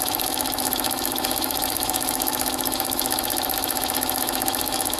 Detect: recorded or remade remade